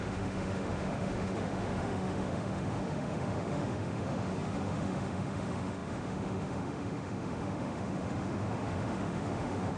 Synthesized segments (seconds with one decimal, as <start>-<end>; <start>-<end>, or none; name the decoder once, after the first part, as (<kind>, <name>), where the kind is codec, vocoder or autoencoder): 0.0-9.8 (autoencoder, DAC-VAE)